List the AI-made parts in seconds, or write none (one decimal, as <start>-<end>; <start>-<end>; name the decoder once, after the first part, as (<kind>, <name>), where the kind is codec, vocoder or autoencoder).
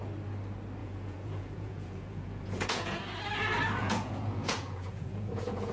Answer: 0.8-3.0 (vocoder, Vocos); 3.8-5.7